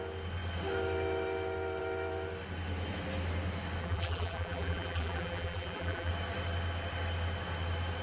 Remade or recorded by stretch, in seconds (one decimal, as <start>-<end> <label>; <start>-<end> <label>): 0.0-3.8 recorded; 3.8-6.1 remade; 6.1-8.0 recorded